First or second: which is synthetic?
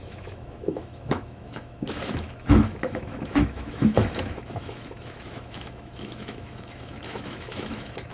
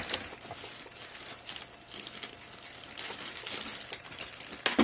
first